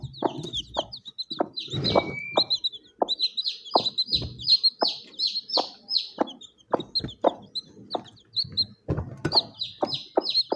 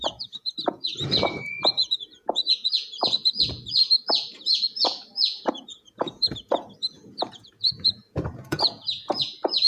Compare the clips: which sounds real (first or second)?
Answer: first